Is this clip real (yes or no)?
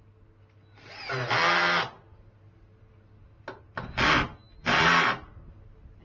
yes